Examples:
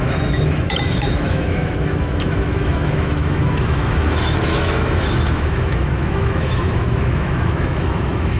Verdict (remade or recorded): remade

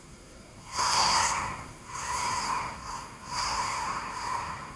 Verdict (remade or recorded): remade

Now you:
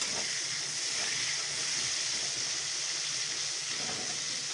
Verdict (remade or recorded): recorded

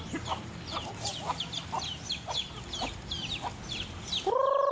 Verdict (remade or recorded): recorded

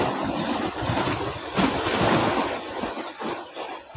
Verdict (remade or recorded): recorded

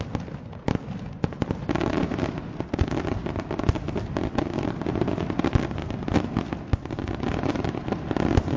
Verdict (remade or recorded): recorded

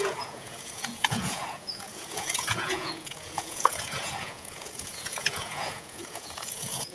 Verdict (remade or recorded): remade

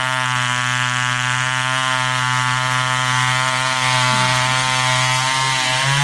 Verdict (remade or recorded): recorded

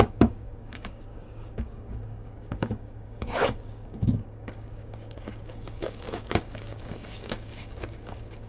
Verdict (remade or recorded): remade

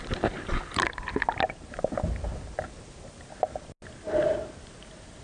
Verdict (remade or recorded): recorded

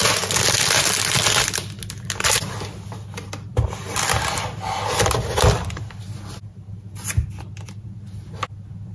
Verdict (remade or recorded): recorded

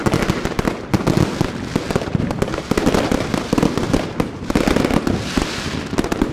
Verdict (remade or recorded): recorded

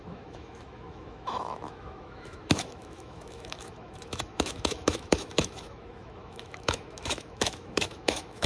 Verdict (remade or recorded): remade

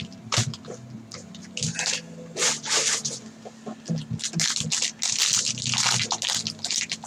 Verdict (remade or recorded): recorded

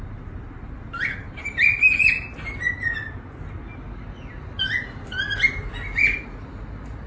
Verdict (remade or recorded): recorded